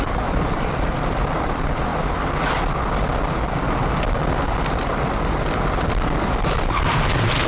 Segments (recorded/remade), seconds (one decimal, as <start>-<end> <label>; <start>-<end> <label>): 0.0-1.9 remade; 1.9-6.4 recorded; 6.4-7.5 remade